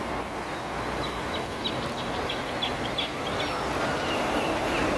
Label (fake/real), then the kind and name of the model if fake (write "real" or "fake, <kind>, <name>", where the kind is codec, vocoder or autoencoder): real